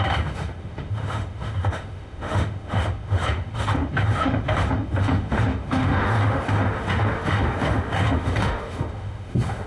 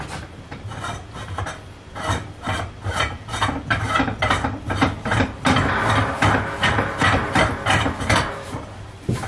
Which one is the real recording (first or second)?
second